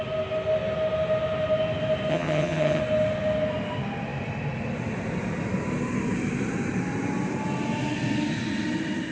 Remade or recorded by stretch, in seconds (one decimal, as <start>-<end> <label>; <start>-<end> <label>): 0.0-2.1 recorded; 2.1-2.8 remade; 2.8-9.1 recorded